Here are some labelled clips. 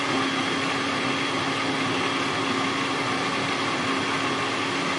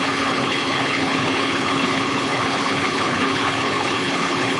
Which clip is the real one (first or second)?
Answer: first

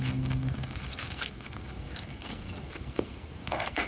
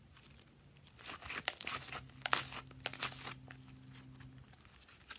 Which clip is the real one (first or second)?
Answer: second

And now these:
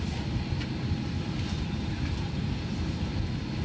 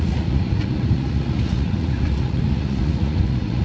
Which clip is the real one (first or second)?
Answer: first